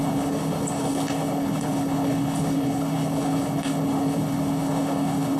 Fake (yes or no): yes